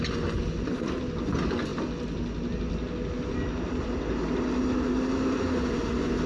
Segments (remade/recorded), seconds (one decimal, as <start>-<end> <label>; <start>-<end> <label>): 0.0-6.3 recorded